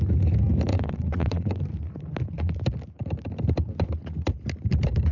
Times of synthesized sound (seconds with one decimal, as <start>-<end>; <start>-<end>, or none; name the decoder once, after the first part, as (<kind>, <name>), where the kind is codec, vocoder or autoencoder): 0.7-1.6 (vocoder, WaveNeXt)